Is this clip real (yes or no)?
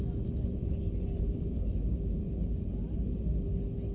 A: yes